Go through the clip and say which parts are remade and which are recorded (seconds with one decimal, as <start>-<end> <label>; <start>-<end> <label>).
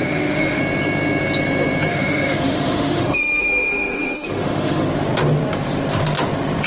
0.0-0.6 remade; 0.6-1.9 recorded; 1.9-4.9 remade; 4.9-6.7 recorded